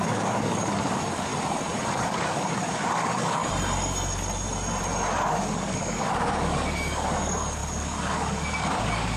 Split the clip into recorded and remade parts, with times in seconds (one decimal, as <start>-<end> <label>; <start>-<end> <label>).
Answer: 0.0-1.3 remade; 1.3-2.0 recorded; 2.0-3.4 remade; 3.4-5.1 recorded; 5.1-9.2 remade